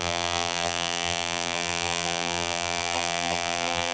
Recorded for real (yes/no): no